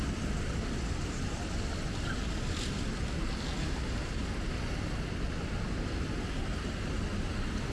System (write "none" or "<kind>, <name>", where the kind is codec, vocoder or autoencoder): none